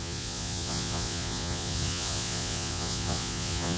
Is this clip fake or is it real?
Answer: fake